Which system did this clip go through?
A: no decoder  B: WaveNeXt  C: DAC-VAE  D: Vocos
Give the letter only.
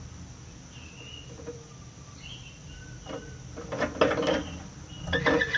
A